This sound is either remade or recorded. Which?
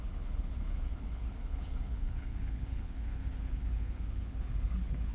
remade